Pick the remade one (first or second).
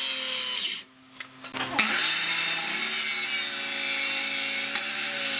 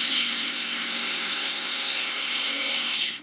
second